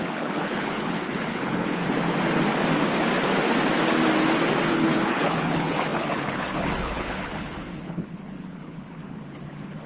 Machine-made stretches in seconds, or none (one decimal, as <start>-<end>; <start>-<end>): 0.0-1.8; 4.7-9.9